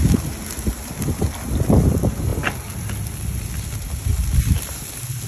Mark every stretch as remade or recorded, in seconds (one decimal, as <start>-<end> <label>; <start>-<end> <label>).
0.0-5.3 recorded